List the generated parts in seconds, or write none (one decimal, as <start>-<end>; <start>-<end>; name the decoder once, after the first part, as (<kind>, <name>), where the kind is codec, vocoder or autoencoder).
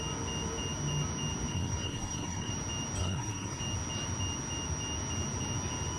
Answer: 1.5-2.5 (codec, SNAC); 3.0-3.6